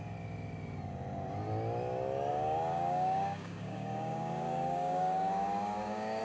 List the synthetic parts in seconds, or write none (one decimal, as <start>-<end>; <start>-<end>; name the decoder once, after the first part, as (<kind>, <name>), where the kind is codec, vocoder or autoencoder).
2.3-6.2 (codec, DAC)